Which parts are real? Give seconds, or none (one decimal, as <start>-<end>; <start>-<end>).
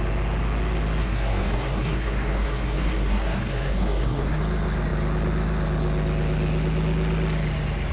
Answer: 0.0-1.0; 4.4-7.9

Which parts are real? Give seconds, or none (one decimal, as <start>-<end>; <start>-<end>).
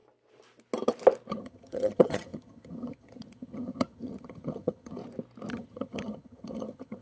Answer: 0.0-1.3; 5.0-5.5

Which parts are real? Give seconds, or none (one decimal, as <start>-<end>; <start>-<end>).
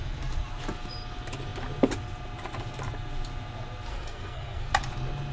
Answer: 0.0-3.9; 4.7-5.3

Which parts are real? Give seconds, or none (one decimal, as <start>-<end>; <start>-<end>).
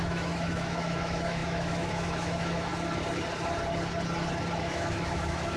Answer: 2.7-4.6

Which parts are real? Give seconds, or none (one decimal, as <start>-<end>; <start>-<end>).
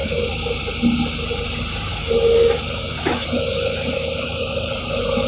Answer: 0.5-1.9